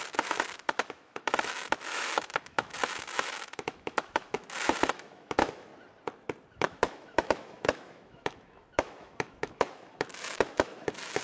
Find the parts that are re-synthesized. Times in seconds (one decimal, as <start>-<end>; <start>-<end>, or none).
0.0-5.7; 6.5-11.2